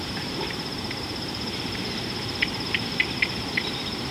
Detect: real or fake fake